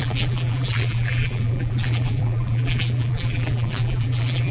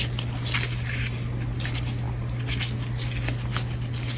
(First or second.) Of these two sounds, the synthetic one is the first